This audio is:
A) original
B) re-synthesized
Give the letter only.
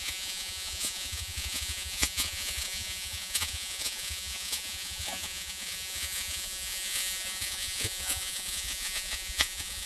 B